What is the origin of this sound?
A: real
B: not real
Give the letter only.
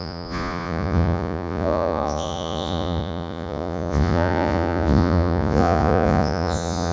B